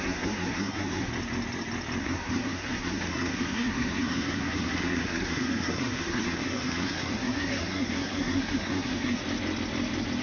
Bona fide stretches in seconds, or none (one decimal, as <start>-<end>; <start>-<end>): 1.1-2.0; 9.2-10.2